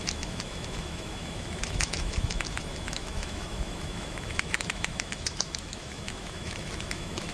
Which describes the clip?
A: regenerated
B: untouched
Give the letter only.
A